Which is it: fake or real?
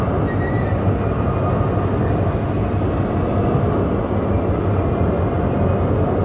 real